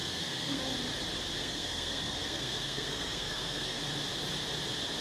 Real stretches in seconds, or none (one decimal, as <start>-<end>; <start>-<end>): 0.6-1.4; 3.8-5.0